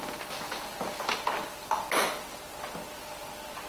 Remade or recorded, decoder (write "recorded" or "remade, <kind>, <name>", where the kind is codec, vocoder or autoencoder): recorded